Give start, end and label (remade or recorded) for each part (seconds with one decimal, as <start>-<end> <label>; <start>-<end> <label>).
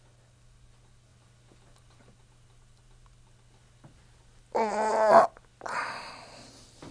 0.0-6.9 recorded